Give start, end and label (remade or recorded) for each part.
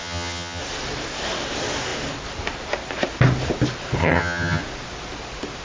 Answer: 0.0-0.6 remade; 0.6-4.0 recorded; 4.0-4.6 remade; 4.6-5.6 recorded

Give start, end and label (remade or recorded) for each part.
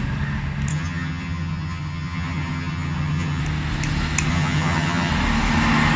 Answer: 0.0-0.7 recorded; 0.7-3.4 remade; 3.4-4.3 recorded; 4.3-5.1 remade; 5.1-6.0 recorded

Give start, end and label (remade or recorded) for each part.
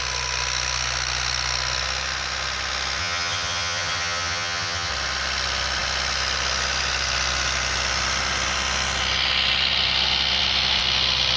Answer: 0.0-3.0 recorded; 3.0-4.9 remade; 4.9-11.4 recorded